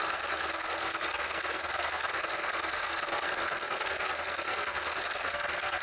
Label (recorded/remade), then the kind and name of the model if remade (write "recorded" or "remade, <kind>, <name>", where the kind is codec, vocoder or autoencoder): remade, codec, SNAC